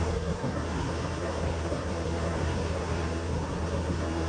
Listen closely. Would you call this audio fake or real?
fake